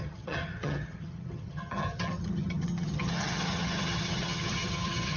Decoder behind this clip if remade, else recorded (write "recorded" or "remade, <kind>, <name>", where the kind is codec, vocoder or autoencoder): remade, vocoder, HiFi-GAN